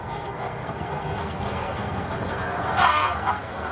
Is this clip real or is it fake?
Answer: fake